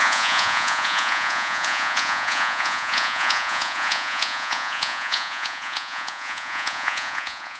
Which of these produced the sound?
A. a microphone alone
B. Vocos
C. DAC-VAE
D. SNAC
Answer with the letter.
B